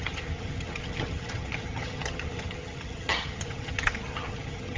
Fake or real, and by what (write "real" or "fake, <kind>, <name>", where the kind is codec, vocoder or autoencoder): fake, vocoder, HiFi-GAN